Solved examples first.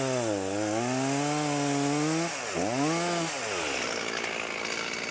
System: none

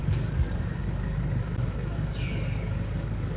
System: codec, DAC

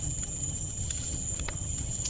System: vocoder, HiFi-GAN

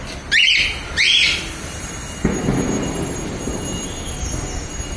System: none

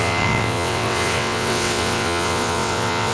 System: vocoder, WaveNeXt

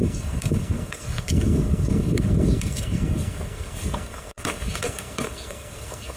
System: codec, SNAC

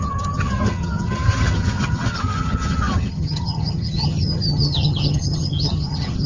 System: vocoder, HiFi-GAN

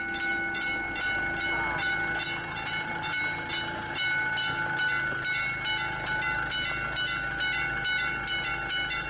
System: none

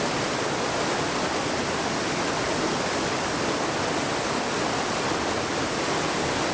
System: none